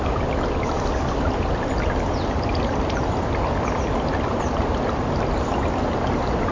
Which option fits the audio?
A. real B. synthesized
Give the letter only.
A